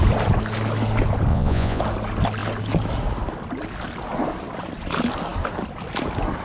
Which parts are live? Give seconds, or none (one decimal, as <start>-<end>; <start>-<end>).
0.0-1.3; 1.8-6.4